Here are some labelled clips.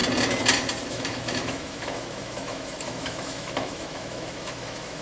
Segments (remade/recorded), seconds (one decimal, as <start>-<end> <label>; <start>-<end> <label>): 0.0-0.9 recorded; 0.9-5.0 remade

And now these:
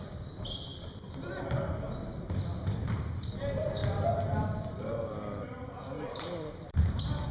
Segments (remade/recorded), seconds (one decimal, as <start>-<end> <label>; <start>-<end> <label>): 0.0-0.7 remade; 0.7-1.4 recorded; 1.4-7.3 remade

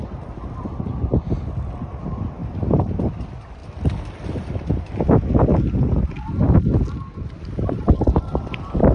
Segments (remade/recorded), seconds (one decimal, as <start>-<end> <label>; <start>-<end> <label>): 0.0-2.4 recorded; 2.4-3.0 remade; 3.0-8.9 recorded

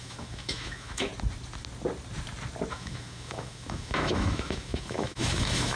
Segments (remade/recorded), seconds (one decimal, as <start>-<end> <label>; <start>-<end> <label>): 0.0-1.1 remade; 1.1-2.7 recorded; 2.7-5.8 remade

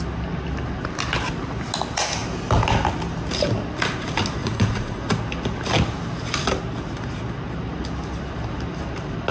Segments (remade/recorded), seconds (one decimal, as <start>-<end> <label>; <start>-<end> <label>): 0.0-4.4 recorded; 4.4-5.0 remade; 5.0-9.3 recorded